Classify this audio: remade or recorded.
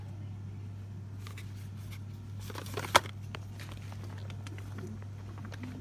recorded